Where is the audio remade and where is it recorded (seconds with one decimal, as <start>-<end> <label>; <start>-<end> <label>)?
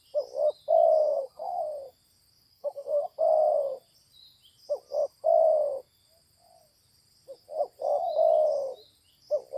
0.0-1.0 recorded; 1.0-1.6 remade; 1.6-2.5 recorded; 2.5-3.1 remade; 3.1-9.6 recorded